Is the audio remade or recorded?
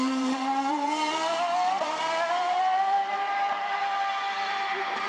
remade